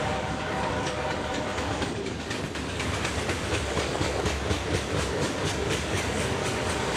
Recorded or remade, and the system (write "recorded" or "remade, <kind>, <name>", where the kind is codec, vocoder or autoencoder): remade, codec, DAC